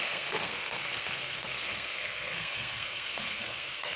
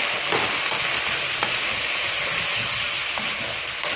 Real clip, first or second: second